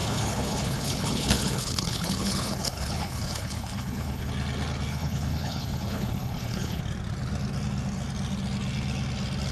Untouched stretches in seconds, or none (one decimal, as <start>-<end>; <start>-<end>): 4.3-4.9; 6.8-9.5